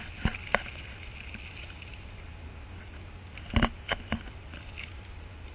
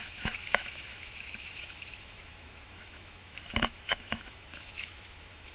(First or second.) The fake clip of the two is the second